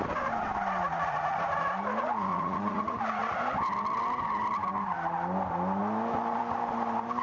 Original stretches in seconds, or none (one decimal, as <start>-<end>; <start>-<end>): 0.0-0.8; 1.5-2.3; 3.0-7.2

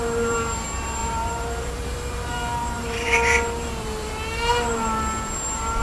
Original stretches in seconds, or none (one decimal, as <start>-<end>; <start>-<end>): none

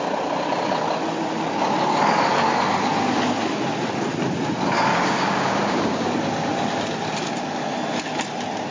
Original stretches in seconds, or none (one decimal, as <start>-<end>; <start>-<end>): 0.0-4.9; 6.1-8.7